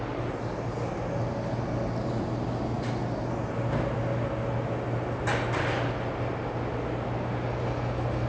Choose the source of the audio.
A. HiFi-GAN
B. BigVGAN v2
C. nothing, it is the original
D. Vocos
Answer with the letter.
C